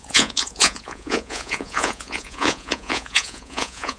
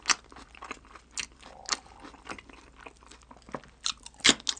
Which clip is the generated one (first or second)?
first